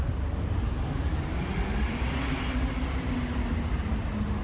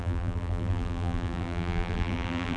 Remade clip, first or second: second